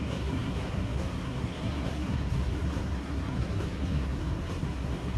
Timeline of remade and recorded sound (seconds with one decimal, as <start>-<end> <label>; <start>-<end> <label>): 0.0-5.2 remade